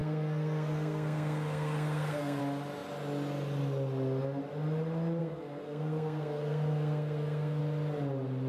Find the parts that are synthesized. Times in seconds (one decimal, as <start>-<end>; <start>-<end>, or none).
0.0-2.4; 5.2-7.6

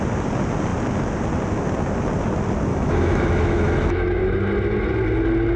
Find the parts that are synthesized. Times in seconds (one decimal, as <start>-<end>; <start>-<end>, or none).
2.7-4.2

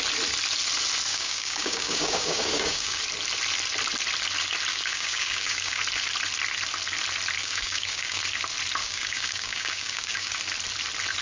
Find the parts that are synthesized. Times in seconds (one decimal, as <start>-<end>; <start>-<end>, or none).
1.1-3.0; 4.7-5.8; 7.4-8.2; 8.8-10.4

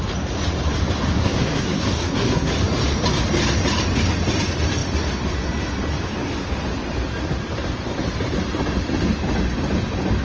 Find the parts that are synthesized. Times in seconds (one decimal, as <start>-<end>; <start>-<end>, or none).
1.2-2.5

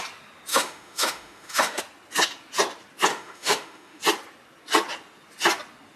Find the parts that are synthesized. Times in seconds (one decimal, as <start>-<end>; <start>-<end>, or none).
0.5-1.8; 3.1-4.0

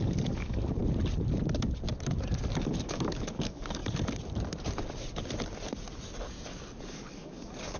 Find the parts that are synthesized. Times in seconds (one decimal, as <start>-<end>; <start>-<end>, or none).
0.0-0.8; 2.6-3.8; 6.8-7.8

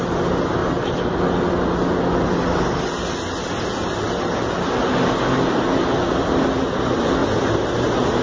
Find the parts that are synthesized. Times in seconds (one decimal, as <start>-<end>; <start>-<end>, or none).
7.2-8.2